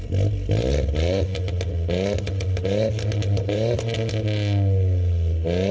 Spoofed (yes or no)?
no